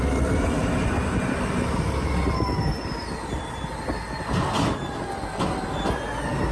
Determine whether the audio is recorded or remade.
recorded